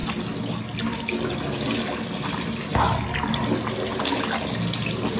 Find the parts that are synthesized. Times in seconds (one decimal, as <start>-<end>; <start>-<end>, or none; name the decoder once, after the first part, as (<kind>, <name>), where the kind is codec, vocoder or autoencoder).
none